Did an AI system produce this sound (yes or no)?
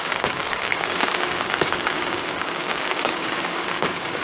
yes